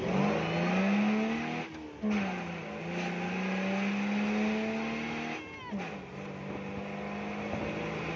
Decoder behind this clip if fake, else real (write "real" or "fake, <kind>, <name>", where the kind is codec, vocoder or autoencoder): real